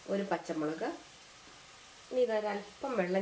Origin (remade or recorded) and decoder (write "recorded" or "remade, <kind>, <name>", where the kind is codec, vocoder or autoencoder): recorded